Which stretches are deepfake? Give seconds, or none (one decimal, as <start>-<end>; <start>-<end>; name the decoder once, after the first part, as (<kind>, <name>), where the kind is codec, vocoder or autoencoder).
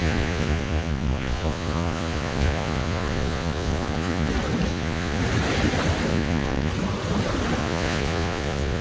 0.0-4.3 (vocoder, Vocos); 4.7-5.2; 6.1-6.7; 7.6-8.8